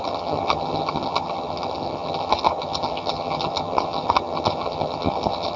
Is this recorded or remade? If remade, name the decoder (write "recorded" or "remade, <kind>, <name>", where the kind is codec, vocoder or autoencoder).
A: remade, vocoder, HiFi-GAN